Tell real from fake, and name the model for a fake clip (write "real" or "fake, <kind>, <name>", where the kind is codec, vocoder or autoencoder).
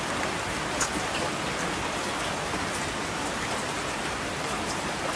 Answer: real